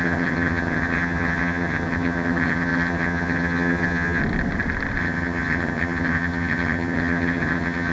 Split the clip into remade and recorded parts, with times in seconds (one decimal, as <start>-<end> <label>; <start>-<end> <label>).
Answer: 0.0-4.2 remade; 4.2-5.0 recorded; 5.0-7.9 remade